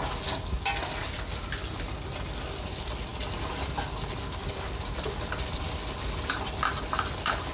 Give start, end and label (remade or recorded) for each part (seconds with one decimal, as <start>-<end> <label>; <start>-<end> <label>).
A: 0.0-7.5 recorded